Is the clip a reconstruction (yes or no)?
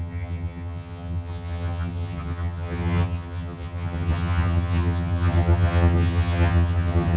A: yes